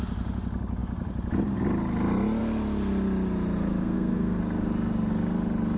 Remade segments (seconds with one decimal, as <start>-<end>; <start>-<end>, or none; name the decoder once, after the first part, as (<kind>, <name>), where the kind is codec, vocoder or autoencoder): 3.8-4.4 (codec, SNAC)